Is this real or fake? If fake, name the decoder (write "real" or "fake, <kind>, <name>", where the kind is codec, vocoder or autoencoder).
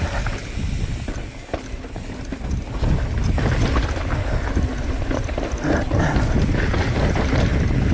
real